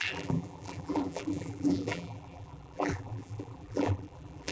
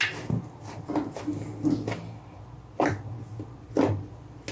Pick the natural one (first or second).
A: second